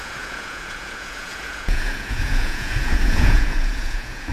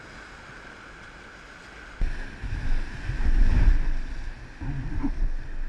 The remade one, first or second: first